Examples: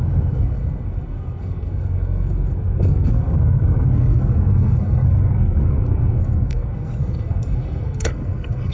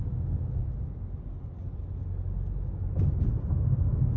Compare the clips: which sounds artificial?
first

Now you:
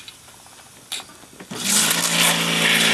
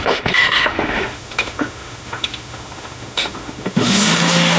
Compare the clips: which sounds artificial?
second